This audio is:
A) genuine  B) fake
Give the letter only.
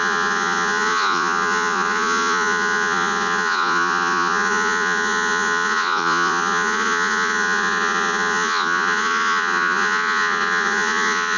B